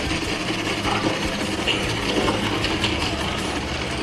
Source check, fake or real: real